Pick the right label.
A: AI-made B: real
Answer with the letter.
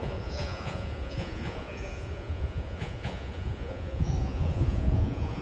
A